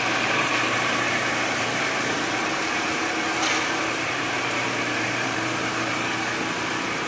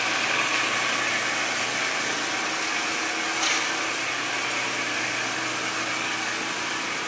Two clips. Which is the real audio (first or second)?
second